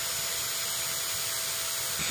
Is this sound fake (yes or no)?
no